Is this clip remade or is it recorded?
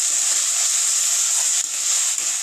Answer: recorded